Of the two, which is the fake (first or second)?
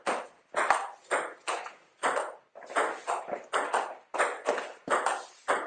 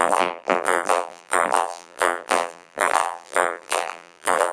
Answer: second